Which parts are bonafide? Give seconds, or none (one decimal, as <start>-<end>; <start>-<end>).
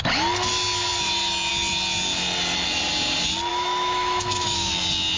0.0-3.5; 4.7-5.2